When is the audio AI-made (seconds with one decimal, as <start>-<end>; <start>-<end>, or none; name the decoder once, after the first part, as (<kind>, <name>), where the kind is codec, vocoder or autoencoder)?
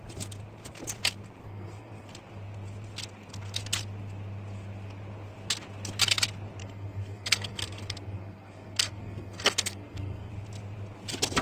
1.4-2.1 (codec, SNAC); 6.6-10.3